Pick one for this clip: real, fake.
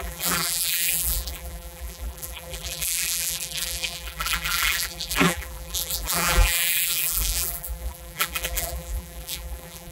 fake